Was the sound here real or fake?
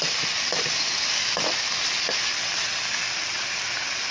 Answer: real